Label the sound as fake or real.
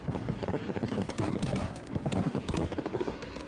fake